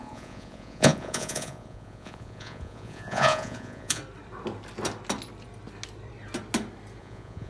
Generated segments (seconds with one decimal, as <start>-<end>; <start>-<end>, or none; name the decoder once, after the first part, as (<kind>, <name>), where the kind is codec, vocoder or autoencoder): 0.0-4.0 (vocoder, Vocos); 7.0-7.5